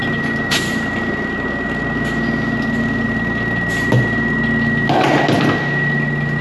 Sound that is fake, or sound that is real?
real